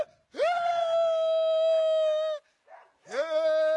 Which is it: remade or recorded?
recorded